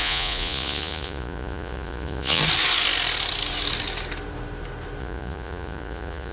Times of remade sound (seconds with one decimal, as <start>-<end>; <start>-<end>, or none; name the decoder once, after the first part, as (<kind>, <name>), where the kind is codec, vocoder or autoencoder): 0.0-2.4 (vocoder, Vocos); 5.0-6.3